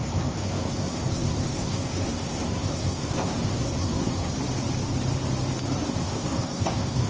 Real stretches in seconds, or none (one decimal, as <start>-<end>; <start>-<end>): 4.3-5.8